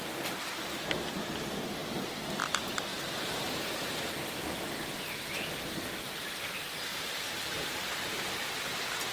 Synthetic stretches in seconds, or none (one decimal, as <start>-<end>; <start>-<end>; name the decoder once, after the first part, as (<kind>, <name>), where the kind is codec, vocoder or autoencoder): 2.9-3.8 (vocoder, BigVGAN v2); 6.9-9.1